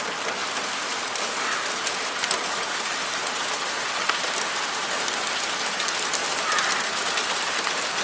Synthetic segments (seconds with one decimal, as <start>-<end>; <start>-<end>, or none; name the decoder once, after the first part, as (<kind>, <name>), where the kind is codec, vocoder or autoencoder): 0.4-1.7 (vocoder, BigVGAN v2); 6.2-7.5